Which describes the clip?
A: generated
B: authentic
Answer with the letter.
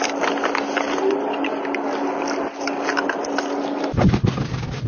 B